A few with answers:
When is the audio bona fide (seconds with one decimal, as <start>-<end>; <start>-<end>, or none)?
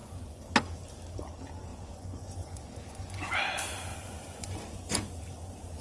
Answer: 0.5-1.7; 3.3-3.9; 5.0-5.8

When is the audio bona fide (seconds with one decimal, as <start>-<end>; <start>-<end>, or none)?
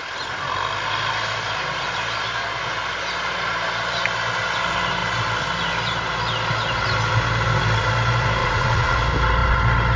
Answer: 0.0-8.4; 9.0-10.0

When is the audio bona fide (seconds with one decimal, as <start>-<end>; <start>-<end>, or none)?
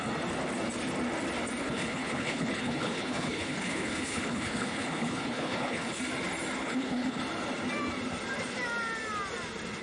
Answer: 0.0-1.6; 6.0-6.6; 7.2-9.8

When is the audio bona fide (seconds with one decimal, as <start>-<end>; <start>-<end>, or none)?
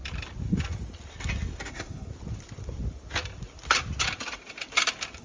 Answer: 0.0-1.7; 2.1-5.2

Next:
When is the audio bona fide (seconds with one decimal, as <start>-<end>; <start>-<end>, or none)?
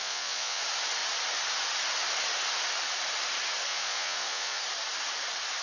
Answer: 0.6-3.7; 4.6-5.6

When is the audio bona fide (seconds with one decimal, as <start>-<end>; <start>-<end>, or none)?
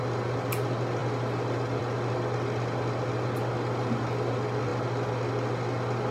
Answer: 0.0-6.1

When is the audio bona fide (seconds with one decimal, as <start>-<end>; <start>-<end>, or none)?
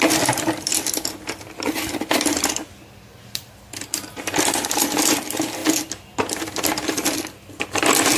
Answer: 0.0-8.2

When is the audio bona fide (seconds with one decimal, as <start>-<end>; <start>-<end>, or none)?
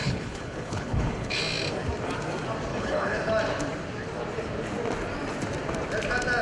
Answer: 1.4-2.7; 3.3-6.4